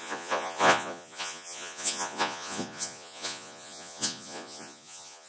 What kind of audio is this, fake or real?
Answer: fake